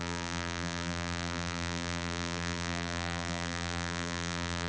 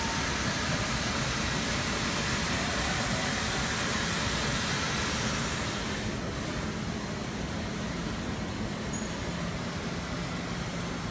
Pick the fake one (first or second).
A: first